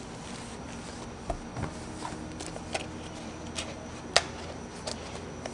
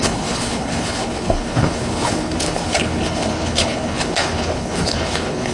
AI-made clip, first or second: second